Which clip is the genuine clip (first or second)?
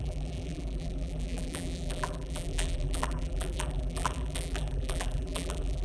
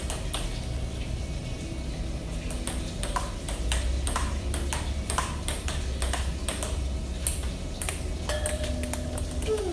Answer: second